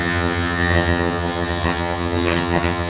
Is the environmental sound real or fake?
fake